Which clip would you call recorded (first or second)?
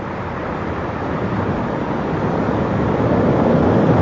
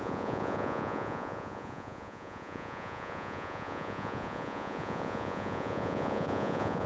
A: first